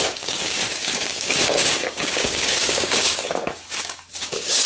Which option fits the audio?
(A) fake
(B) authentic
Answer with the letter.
A